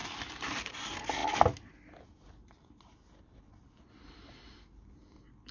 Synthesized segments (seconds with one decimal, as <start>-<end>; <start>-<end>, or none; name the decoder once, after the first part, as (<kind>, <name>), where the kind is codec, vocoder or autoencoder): none

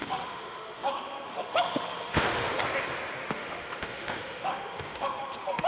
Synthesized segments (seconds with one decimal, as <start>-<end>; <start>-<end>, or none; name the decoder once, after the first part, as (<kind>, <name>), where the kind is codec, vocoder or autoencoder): 0.0-2.6 (autoencoder, DAC-VAE); 3.3-5.7

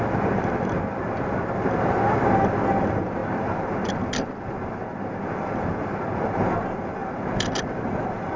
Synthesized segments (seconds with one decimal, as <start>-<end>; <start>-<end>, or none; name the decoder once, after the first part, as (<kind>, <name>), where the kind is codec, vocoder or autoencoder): 7.0-8.4 (vocoder, BigVGAN v2)

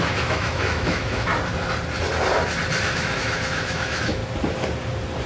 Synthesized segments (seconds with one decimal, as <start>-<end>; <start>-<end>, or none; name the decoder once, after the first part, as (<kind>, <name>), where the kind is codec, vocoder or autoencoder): 0.0-1.3 (autoencoder, DAC-VAE); 2.8-4.2

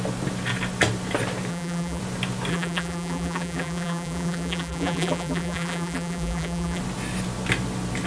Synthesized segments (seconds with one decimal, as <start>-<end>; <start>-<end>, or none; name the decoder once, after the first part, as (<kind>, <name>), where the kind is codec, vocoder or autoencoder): 1.5-2.0 (vocoder, BigVGAN v2); 2.5-6.8

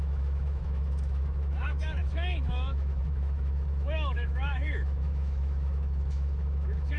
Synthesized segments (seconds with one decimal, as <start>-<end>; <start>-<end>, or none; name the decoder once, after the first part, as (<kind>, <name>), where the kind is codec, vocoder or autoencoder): 0.0-7.0 (autoencoder, DAC-VAE)

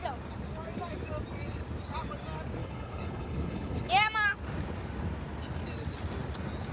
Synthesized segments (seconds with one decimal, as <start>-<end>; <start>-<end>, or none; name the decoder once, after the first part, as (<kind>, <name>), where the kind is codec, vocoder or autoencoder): 2.6-3.9 (codec, HILCodec)

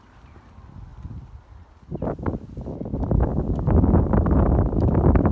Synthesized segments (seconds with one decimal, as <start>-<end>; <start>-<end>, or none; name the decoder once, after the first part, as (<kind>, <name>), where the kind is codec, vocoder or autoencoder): none